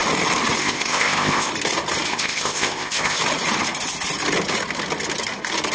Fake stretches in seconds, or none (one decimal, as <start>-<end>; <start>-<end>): 0.6-1.5; 2.1-3.2